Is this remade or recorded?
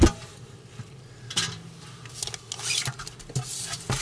recorded